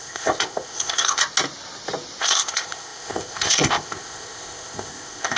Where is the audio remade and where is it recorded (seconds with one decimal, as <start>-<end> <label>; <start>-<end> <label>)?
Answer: 0.0-1.2 remade; 1.2-2.2 recorded; 2.2-5.4 remade

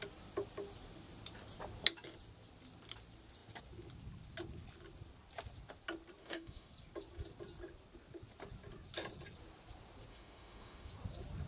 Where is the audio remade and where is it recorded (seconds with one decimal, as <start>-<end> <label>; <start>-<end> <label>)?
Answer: 0.0-6.2 recorded; 6.2-6.7 remade; 6.7-10.1 recorded; 10.1-10.9 remade; 10.9-11.5 recorded

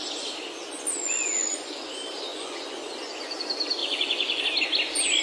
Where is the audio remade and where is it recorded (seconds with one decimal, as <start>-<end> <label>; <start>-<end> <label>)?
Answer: 0.0-0.6 recorded; 0.6-1.8 remade; 1.8-2.3 recorded; 2.3-3.4 remade; 3.4-3.8 recorded; 3.8-4.4 remade; 4.4-5.2 recorded

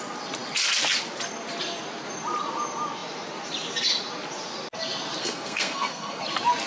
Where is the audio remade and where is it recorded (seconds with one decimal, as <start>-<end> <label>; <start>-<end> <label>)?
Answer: 0.0-5.2 recorded; 5.2-6.2 remade; 6.2-6.7 recorded